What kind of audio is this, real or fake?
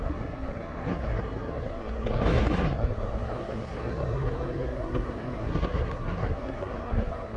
fake